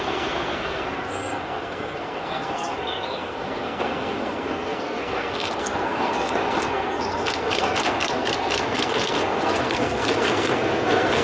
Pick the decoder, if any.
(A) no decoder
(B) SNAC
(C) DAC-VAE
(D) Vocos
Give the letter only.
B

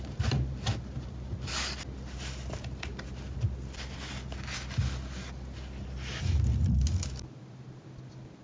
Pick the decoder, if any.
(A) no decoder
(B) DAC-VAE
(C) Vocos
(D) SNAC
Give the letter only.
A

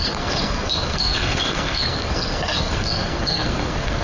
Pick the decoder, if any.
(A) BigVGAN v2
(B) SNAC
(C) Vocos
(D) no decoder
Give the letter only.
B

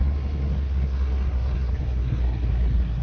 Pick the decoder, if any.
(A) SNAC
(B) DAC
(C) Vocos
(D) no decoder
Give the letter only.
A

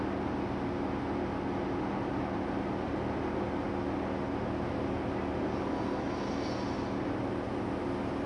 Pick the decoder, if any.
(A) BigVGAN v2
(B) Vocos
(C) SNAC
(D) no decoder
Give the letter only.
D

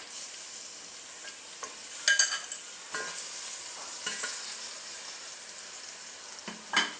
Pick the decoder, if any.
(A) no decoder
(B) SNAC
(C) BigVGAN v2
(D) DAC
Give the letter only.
A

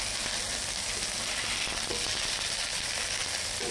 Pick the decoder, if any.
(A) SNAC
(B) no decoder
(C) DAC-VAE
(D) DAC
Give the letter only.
B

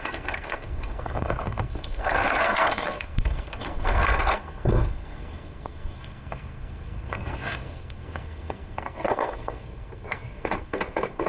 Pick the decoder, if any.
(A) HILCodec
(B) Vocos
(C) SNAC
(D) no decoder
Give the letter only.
C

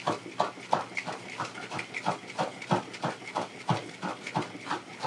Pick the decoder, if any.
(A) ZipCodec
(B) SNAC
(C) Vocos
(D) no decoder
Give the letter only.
D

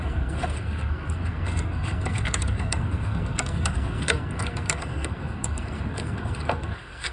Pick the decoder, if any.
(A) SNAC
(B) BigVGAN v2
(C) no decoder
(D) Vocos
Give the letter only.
A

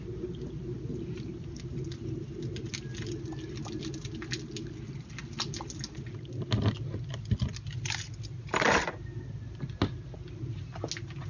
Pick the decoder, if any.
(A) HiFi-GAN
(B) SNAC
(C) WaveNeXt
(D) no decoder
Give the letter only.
D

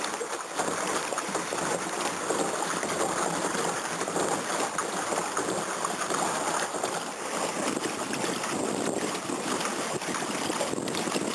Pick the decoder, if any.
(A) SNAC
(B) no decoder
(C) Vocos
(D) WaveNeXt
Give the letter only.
B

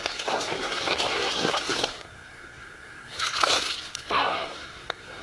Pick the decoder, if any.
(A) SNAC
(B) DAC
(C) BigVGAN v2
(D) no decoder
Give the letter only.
A